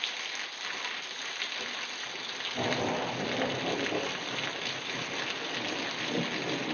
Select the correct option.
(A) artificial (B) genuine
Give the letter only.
B